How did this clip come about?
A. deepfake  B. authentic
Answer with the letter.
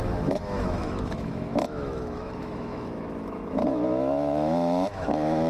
A